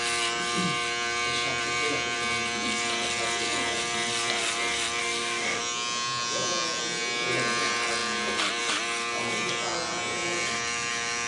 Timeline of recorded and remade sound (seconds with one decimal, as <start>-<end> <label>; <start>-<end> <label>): 0.0-5.0 recorded; 5.0-5.6 remade; 5.6-11.3 recorded